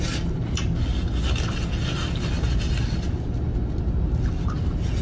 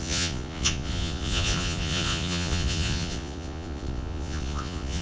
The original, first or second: first